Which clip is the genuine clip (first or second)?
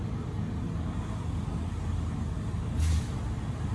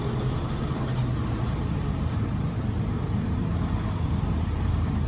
first